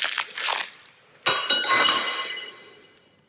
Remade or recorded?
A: recorded